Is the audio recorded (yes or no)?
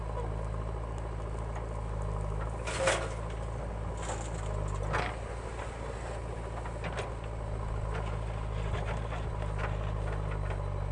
yes